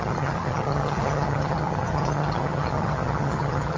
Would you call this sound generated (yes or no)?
yes